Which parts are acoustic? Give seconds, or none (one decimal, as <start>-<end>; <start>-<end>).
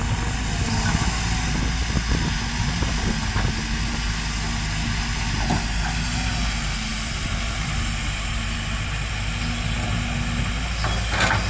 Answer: 0.0-6.9; 9.1-11.5